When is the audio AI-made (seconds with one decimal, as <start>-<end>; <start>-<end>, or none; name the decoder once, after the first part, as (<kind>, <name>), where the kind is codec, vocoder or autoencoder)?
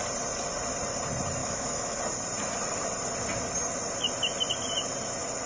1.4-2.0 (autoencoder, DAC-VAE)